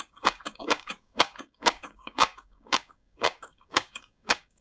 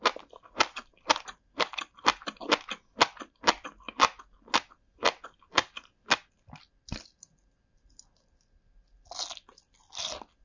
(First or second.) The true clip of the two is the second